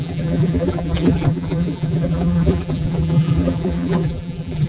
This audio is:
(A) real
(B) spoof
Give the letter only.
B